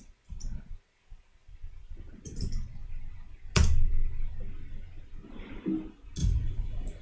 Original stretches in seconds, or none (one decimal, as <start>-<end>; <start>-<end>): 0.0-6.2